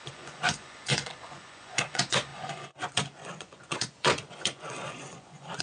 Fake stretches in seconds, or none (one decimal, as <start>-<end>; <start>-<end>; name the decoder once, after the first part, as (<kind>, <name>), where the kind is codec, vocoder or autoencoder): 0.0-5.6 (vocoder, Vocos)